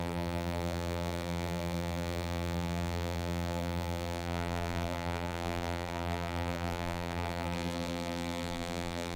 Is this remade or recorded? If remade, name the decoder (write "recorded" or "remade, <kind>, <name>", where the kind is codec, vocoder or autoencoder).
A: remade, vocoder, BigVGAN v2